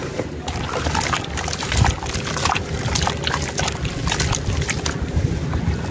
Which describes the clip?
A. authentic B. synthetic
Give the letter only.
A